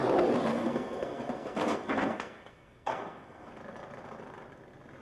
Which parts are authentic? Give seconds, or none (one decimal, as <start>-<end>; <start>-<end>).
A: 0.0-0.5; 3.5-5.0